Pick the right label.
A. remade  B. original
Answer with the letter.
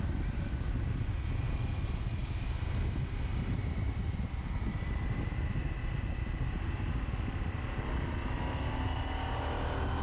B